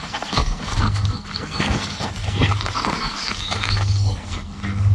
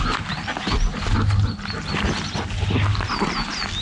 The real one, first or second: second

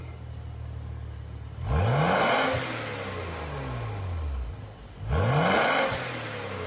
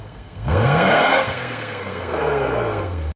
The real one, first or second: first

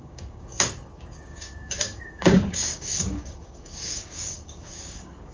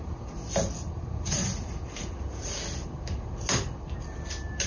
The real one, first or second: second